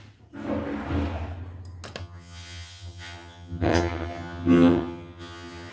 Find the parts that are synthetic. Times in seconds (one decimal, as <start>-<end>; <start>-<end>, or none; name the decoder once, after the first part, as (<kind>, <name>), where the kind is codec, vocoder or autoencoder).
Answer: 2.0-5.7 (vocoder, HiFi-GAN)